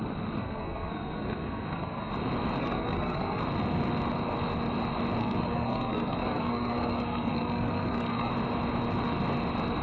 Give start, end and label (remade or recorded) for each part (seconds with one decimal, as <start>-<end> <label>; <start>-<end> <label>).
0.0-0.4 recorded; 0.4-2.1 remade; 2.1-2.6 recorded; 2.6-3.4 remade; 3.4-5.2 recorded; 5.2-8.3 remade; 8.3-9.8 recorded